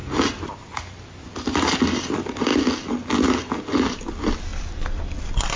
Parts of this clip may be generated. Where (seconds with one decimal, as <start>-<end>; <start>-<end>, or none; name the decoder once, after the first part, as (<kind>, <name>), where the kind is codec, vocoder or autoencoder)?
none